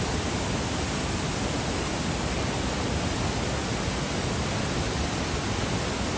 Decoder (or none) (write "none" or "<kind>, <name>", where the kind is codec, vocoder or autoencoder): none